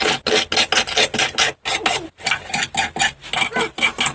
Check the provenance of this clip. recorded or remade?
recorded